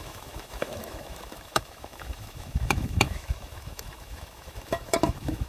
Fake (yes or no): yes